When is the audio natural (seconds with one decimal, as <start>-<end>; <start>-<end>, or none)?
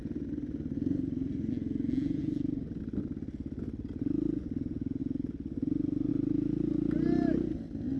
0.0-8.0